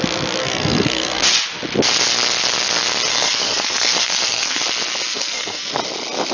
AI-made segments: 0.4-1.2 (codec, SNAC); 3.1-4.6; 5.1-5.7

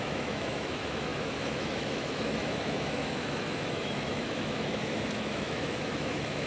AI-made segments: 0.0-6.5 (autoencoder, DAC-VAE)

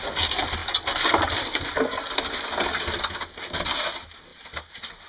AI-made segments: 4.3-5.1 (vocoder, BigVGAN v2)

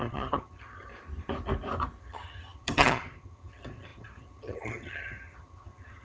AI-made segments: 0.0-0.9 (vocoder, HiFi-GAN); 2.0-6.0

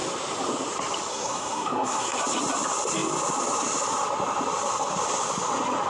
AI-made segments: 1.1-2.2 (codec, SNAC)

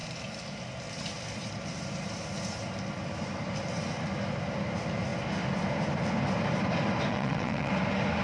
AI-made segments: 7.1-7.7 (vocoder, WaveNeXt)